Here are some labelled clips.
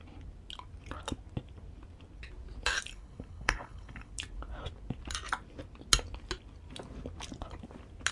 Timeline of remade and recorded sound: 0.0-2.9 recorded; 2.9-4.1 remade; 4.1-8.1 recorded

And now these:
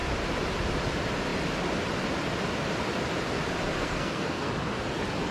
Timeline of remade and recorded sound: 0.0-3.8 recorded; 3.8-4.5 remade; 4.5-5.3 recorded

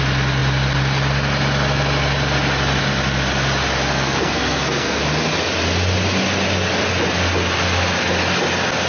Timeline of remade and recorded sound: 0.0-3.9 recorded; 3.9-5.0 remade; 5.0-8.9 recorded

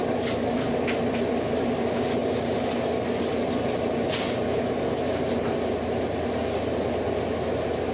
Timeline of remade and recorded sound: 0.0-7.9 recorded

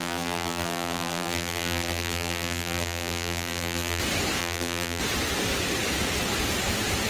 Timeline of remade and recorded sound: 0.0-4.0 remade; 4.0-4.4 recorded; 4.4-5.0 remade; 5.0-7.1 recorded